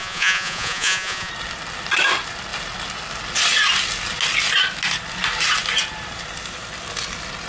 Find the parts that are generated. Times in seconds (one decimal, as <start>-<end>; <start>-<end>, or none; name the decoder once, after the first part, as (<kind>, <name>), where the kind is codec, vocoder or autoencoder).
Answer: 0.0-1.3 (vocoder, Vocos)